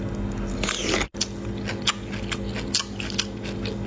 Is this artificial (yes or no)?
no